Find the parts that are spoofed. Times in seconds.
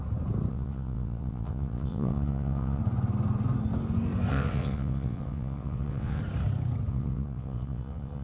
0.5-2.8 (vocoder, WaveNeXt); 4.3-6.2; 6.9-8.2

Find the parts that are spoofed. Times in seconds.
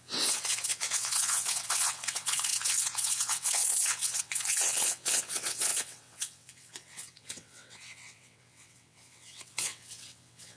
0.0-10.6 (vocoder, WaveNeXt)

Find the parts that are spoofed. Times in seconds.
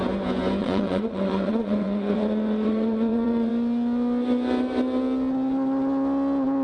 0.6-3.5 (vocoder, WaveNeXt)